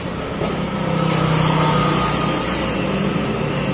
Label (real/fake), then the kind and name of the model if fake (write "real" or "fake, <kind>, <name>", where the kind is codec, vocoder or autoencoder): real